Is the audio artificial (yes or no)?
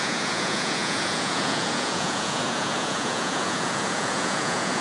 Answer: yes